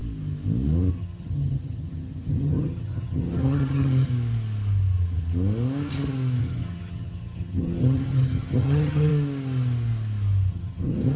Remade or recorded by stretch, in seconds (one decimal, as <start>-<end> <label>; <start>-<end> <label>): 0.0-0.9 recorded; 0.9-4.1 remade; 4.1-6.4 recorded; 6.4-9.1 remade; 9.1-10.5 recorded; 10.5-11.2 remade